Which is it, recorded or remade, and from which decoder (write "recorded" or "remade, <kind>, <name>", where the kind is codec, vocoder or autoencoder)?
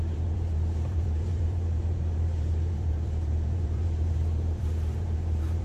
remade, vocoder, BigVGAN v2